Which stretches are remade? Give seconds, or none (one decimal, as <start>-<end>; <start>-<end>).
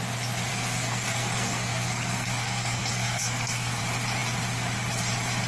0.5-3.8